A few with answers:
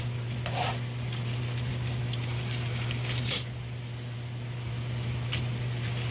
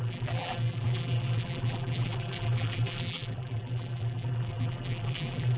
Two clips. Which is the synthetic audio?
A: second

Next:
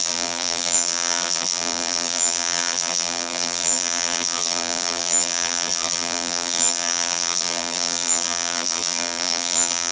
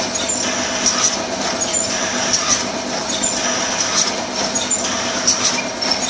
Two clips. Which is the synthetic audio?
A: first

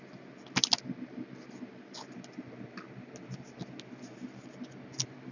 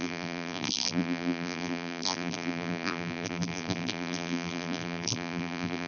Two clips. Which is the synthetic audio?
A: second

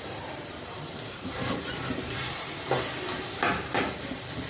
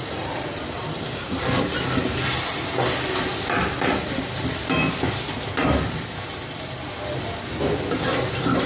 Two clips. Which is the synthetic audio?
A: first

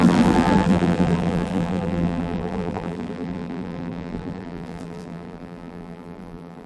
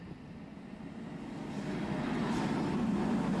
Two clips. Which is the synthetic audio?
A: first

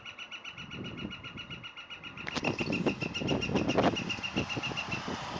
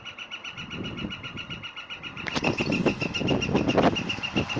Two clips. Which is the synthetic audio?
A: second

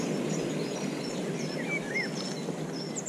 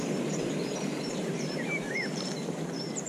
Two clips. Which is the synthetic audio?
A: second